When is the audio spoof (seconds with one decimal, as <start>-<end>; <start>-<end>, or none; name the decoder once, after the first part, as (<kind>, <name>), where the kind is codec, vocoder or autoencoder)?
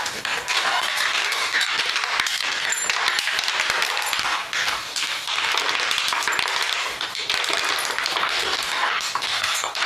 0.0-1.8 (codec, DAC); 2.3-2.7; 4.2-5.5; 6.8-7.3; 8.2-9.9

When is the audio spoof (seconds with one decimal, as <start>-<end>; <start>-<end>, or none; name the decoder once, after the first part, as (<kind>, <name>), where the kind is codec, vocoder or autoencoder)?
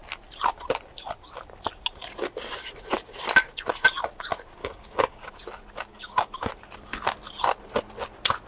4.6-5.3 (codec, DAC); 5.9-6.5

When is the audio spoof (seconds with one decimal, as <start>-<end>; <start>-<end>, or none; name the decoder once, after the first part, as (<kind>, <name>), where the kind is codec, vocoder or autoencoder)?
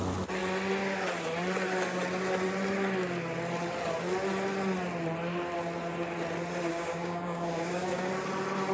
6.7-8.1 (codec, DAC)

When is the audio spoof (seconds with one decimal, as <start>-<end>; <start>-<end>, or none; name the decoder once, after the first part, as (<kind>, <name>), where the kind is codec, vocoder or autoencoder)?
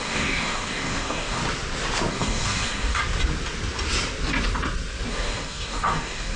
0.0-1.4 (codec, DAC); 2.1-3.0; 5.1-6.4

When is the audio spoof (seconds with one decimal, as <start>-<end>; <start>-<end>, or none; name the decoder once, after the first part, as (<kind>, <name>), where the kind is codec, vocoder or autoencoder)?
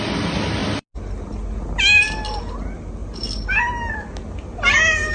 none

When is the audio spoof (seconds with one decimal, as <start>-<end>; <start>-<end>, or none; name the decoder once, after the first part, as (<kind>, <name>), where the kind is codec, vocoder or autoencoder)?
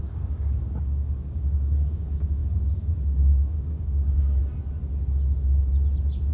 0.0-4.4 (codec, DAC)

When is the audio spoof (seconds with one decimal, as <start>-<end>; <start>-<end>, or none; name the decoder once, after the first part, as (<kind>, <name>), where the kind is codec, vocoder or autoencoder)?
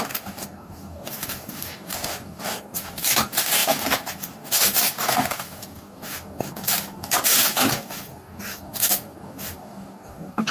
0.0-10.5 (codec, DAC)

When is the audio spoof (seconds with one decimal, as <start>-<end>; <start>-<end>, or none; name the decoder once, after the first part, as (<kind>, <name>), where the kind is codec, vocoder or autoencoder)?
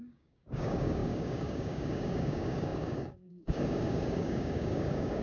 0.0-5.2 (codec, DAC)